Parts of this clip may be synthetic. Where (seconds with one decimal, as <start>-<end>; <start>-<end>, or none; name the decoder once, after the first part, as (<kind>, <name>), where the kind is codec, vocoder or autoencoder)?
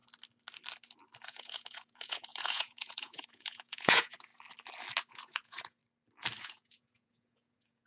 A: 1.2-4.3 (vocoder, Vocos); 5.1-5.8; 6.4-7.9